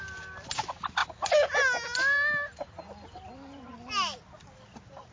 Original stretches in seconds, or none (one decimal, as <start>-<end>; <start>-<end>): 0.0-5.1

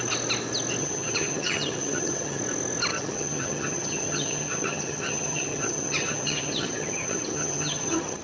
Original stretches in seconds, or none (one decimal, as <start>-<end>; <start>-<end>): 0.0-0.8; 2.4-2.9

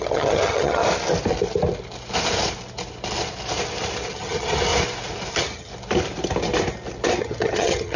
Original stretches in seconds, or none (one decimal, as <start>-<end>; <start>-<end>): 0.8-4.1; 4.7-5.3; 5.7-7.2

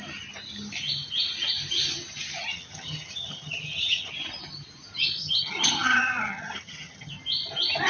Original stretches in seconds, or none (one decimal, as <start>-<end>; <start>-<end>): 0.0-2.5; 4.1-5.2; 7.1-7.9

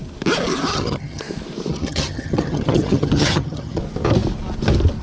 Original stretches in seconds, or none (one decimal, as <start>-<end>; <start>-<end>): 0.0-0.7; 1.2-1.7; 3.8-5.0

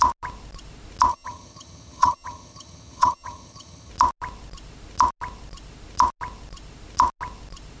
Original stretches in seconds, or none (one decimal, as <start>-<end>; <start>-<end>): 0.0-1.1; 3.9-7.8

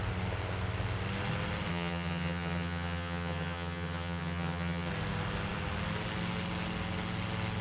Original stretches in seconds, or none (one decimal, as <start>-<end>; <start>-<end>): 0.0-1.7; 4.9-7.6

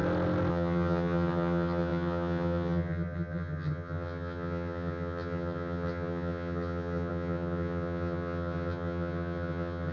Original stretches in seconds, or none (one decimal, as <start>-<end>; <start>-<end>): 0.0-0.5